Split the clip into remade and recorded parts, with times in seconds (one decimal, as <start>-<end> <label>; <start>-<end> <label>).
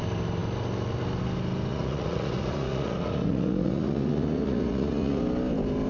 0.0-1.7 recorded; 1.7-5.2 remade; 5.2-5.9 recorded